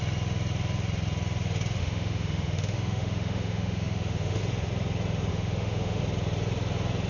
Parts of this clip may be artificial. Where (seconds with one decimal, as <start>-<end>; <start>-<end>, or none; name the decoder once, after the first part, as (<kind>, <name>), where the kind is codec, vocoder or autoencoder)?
1.8-4.4 (autoencoder, DAC-VAE); 5.3-6.0